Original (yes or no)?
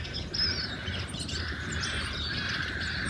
yes